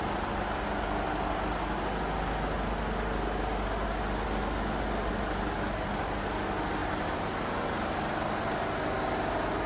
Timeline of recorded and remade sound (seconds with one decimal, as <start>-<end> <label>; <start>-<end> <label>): 0.0-9.7 recorded